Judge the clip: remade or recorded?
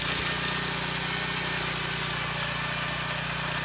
recorded